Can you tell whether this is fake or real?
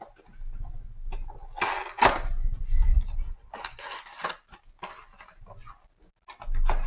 real